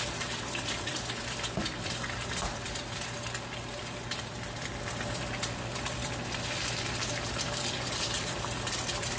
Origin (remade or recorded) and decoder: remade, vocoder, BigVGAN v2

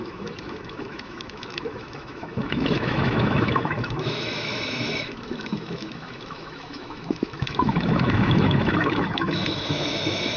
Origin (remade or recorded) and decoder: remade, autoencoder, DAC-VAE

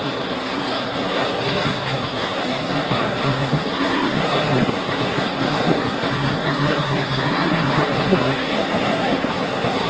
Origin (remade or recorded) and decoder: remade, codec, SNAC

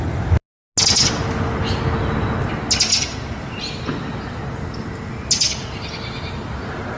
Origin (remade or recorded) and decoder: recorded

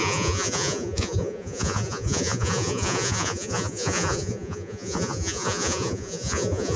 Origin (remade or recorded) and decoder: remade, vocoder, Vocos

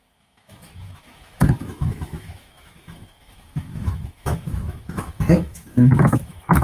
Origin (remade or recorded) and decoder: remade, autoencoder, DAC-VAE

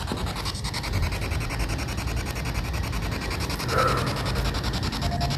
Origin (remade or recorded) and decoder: recorded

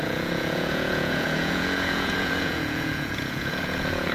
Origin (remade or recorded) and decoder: remade, vocoder, Vocos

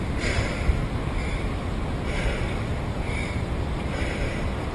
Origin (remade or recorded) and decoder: remade, vocoder, BigVGAN v2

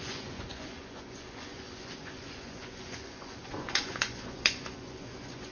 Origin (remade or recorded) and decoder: remade, vocoder, Vocos